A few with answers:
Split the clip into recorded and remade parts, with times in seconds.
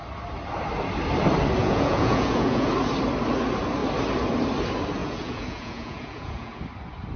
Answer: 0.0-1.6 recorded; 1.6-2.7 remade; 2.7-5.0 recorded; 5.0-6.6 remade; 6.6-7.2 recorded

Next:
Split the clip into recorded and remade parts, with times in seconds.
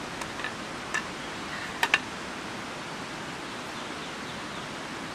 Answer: 0.0-0.9 recorded; 0.9-1.7 remade; 1.7-5.1 recorded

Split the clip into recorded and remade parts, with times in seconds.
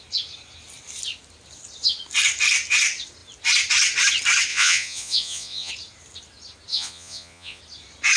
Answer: 0.0-4.5 recorded; 4.5-5.7 remade; 5.7-6.7 recorded; 6.7-7.6 remade; 7.6-8.2 recorded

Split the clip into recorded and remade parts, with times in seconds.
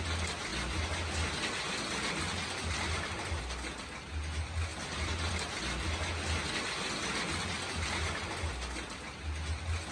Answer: 0.0-9.9 recorded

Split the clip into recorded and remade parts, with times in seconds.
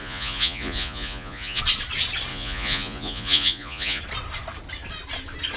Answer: 0.0-1.6 remade; 1.6-2.3 recorded; 2.3-4.0 remade; 4.0-5.6 recorded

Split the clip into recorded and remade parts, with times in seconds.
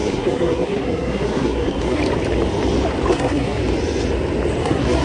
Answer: 0.0-2.0 remade; 2.0-3.1 recorded; 3.1-3.6 remade; 3.6-4.6 recorded; 4.6-5.0 remade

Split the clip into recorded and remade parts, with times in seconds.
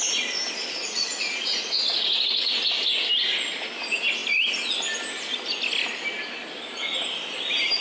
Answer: 0.0-0.6 recorded; 0.6-1.7 remade; 1.7-7.8 recorded